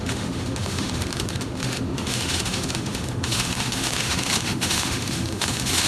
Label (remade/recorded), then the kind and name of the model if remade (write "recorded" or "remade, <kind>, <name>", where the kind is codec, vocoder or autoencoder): remade, autoencoder, DAC-VAE